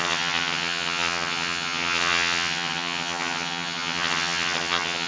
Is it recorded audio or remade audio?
remade